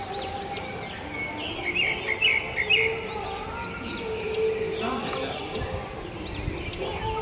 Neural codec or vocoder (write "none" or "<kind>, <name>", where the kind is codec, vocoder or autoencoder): none